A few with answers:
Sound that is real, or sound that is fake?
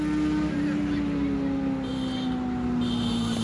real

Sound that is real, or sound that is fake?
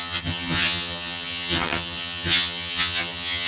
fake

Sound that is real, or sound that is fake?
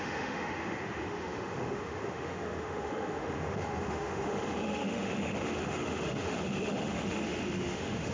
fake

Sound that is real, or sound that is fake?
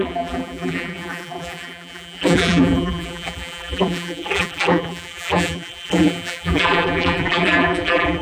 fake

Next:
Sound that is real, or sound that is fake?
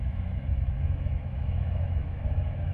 fake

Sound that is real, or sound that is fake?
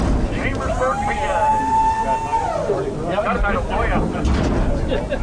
real